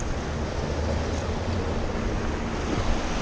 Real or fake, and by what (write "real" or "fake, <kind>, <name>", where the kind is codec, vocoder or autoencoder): real